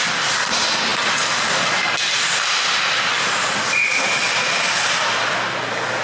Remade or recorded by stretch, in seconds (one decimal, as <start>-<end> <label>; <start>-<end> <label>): 0.0-6.0 recorded